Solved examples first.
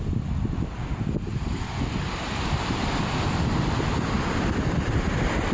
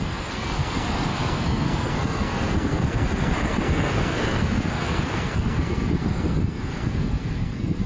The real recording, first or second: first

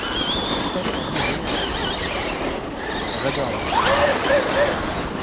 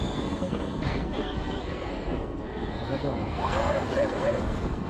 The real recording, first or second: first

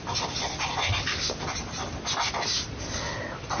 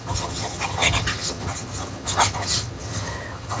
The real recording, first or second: first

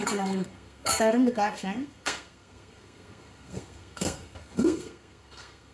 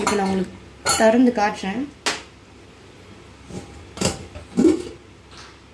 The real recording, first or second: second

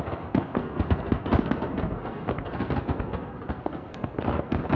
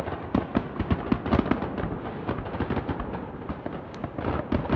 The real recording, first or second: second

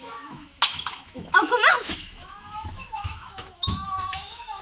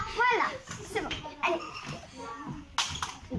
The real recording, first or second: second